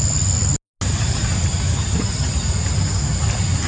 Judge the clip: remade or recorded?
recorded